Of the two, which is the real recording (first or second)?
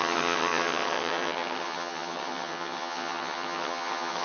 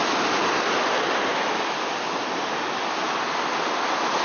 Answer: second